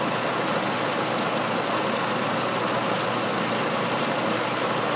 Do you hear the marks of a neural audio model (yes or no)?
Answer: no